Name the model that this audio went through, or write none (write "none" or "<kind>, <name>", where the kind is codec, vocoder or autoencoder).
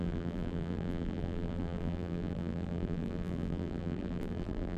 vocoder, BigVGAN v2